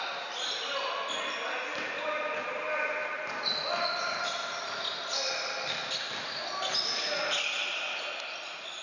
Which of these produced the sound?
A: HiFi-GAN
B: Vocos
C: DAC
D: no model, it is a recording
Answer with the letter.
D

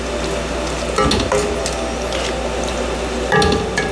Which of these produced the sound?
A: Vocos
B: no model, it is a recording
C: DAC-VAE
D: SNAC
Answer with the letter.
B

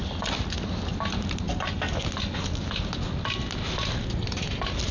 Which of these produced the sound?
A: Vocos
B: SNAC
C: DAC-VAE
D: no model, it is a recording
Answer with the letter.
D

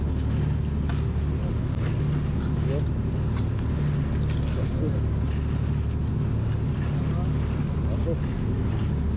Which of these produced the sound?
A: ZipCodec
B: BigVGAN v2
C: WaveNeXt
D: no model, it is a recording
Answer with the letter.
D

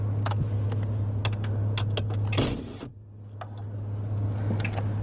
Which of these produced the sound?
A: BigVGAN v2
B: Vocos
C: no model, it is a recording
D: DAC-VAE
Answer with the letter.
C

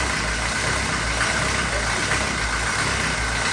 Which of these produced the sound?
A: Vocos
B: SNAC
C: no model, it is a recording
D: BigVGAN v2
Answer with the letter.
C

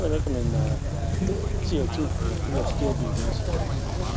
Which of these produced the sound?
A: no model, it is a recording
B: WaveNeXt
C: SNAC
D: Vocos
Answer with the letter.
A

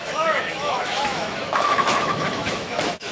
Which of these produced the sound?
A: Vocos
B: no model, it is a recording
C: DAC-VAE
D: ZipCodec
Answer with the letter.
C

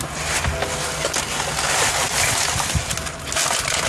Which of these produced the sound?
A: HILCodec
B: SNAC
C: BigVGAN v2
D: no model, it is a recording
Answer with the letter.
D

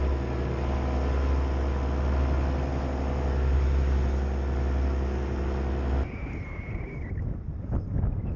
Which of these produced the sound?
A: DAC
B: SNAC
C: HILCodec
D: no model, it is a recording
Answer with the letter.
D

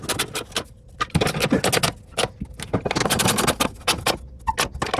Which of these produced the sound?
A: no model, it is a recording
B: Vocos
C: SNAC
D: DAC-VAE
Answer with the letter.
A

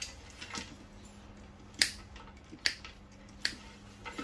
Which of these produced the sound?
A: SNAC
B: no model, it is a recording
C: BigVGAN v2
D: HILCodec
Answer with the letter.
B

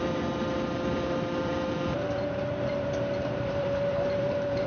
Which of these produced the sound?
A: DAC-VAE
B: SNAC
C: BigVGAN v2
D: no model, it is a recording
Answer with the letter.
C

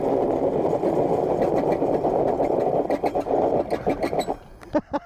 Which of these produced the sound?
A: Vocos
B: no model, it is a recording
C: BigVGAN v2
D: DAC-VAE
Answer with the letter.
B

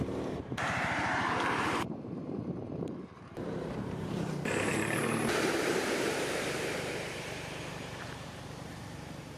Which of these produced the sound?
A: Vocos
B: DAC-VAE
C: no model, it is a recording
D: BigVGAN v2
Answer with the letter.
D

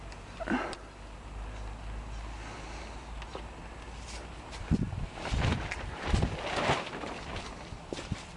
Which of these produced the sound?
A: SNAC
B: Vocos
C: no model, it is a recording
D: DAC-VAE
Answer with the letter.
C